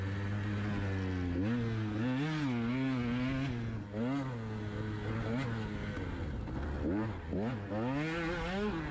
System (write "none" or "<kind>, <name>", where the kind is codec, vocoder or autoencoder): none